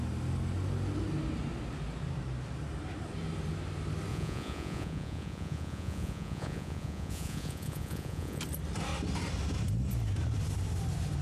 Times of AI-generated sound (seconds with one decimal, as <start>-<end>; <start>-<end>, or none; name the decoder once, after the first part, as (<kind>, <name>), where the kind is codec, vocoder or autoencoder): 4.1-8.4 (vocoder, Vocos)